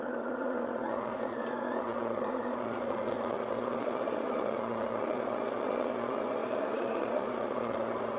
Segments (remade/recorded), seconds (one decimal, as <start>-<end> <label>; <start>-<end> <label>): 0.0-8.2 remade